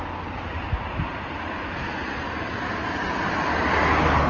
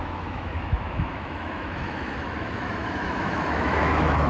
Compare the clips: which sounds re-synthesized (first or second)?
second